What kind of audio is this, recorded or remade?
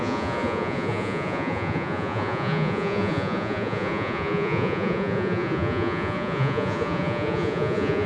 remade